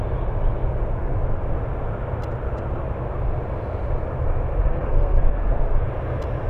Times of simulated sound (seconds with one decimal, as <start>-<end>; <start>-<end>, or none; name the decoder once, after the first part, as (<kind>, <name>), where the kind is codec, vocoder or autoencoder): 4.7-5.8 (codec, SNAC)